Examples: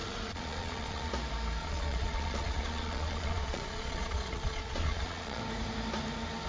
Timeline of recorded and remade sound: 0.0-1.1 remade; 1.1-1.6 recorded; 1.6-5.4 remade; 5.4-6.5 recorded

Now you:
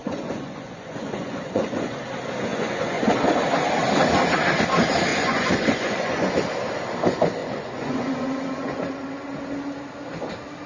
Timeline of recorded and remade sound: 0.0-2.0 remade; 2.0-2.5 recorded; 2.5-3.1 remade; 3.1-5.1 recorded; 5.1-6.3 remade; 6.3-7.4 recorded; 7.4-8.8 remade; 8.8-10.7 recorded

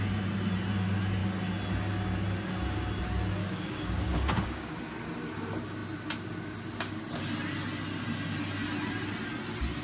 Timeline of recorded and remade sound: 0.0-3.4 recorded; 3.4-4.8 remade; 4.8-9.8 recorded

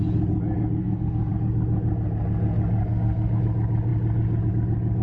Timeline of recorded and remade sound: 0.0-0.8 recorded; 0.8-1.3 remade; 1.3-2.8 recorded; 2.8-3.4 remade; 3.4-5.0 recorded

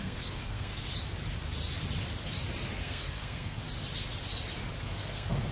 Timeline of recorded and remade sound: 0.0-0.7 remade; 0.7-2.8 recorded; 2.8-3.6 remade; 3.6-4.8 recorded; 4.8-5.5 remade

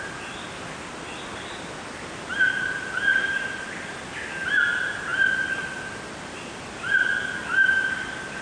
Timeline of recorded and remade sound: 0.0-8.4 recorded

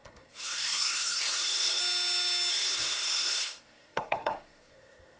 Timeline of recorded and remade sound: 0.0-1.8 remade; 1.8-2.5 recorded; 2.5-5.2 remade